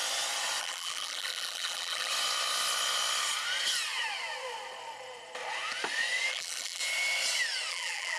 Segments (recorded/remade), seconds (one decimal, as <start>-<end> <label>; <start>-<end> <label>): 0.0-0.6 recorded; 0.6-2.1 remade; 2.1-6.3 recorded; 6.3-6.8 remade; 6.8-7.7 recorded; 7.7-8.2 remade